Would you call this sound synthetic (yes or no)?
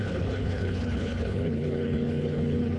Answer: yes